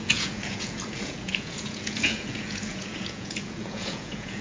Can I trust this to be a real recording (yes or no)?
no